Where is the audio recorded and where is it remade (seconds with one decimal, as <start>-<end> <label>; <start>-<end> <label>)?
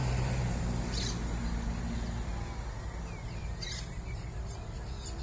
0.0-0.6 remade; 0.6-3.4 recorded; 3.4-4.6 remade; 4.6-5.2 recorded